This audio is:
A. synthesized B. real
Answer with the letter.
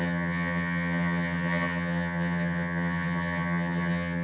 A